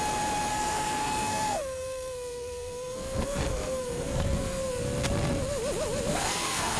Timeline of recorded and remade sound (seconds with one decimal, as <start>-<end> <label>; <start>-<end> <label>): 0.0-0.5 recorded; 0.5-4.6 remade; 4.6-6.1 recorded; 6.1-6.8 remade